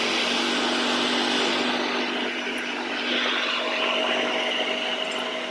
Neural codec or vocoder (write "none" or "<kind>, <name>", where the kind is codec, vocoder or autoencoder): none